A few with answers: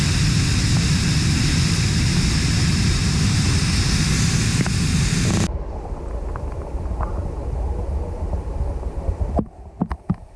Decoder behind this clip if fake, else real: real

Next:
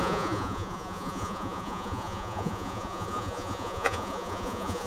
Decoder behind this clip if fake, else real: fake, vocoder, Vocos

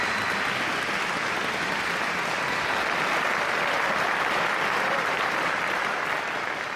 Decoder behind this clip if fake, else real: real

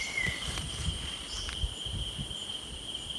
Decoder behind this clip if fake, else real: real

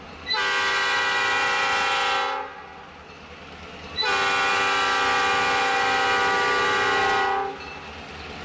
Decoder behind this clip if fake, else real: real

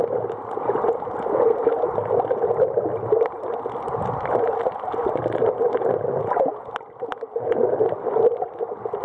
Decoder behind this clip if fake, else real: real